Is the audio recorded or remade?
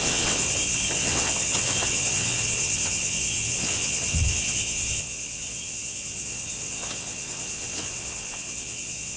remade